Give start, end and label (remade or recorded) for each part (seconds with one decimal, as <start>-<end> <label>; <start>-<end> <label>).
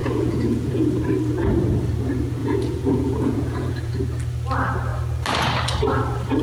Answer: 0.0-0.9 remade; 0.9-2.4 recorded; 2.4-3.9 remade; 3.9-6.4 recorded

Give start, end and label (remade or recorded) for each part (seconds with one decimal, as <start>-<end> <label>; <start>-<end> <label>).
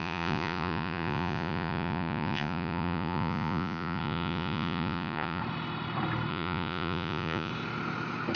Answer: 0.0-5.4 remade; 5.4-6.3 recorded; 6.3-7.5 remade; 7.5-8.4 recorded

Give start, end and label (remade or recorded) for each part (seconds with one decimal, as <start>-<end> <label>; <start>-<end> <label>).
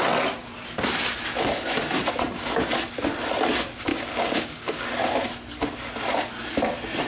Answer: 0.0-3.9 recorded; 3.9-4.9 remade; 4.9-7.1 recorded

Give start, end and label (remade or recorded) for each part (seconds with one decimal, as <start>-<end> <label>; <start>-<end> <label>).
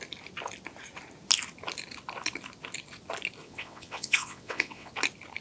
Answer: 0.0-3.4 recorded; 3.4-4.9 remade; 4.9-5.4 recorded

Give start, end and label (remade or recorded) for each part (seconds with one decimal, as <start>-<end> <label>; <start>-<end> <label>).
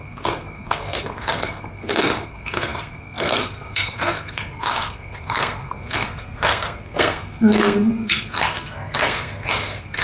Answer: 0.0-10.0 remade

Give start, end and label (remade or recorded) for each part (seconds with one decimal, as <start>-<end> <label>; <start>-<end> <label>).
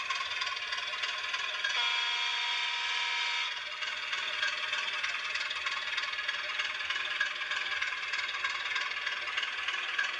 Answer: 0.0-2.3 recorded; 2.3-4.4 remade; 4.4-10.2 recorded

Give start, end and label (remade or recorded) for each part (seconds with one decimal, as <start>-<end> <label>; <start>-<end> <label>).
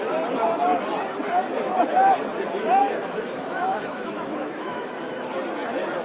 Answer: 0.0-2.8 recorded; 2.8-4.9 remade; 4.9-6.0 recorded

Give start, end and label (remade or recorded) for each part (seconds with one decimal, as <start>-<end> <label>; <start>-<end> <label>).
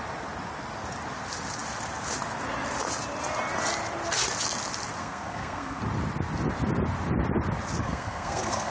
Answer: 0.0-5.0 recorded; 5.0-5.8 remade; 5.8-7.8 recorded; 7.8-8.7 remade